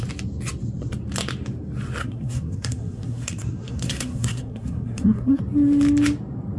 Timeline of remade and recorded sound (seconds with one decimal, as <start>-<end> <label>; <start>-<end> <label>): 0.0-2.0 recorded; 2.0-5.4 remade; 5.4-6.6 recorded

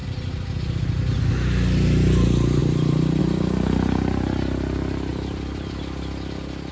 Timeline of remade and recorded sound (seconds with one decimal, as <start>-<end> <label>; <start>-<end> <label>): 0.0-2.6 recorded; 2.6-3.2 remade; 3.2-5.1 recorded; 5.1-5.8 remade; 5.8-6.7 recorded

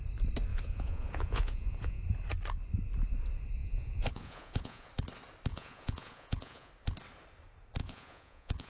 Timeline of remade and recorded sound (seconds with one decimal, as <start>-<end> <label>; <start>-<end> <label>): 0.0-0.5 recorded; 0.5-2.0 remade; 2.0-3.6 recorded; 3.6-4.9 remade; 4.9-5.5 recorded; 5.5-6.7 remade; 6.7-7.8 recorded; 7.8-8.7 remade

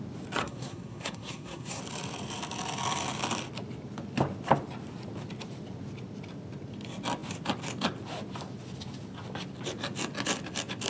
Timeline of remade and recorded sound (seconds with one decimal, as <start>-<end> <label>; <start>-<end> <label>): 0.0-0.4 recorded; 0.4-1.8 remade; 1.8-10.9 recorded

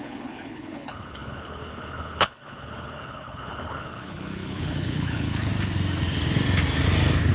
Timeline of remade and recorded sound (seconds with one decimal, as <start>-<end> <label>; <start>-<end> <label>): 0.0-5.5 remade; 5.5-7.3 recorded

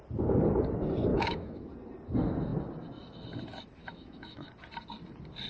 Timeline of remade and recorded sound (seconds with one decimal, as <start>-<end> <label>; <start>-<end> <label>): 0.0-1.1 recorded; 1.1-1.7 remade; 1.7-3.8 recorded; 3.8-4.5 remade; 4.5-5.5 recorded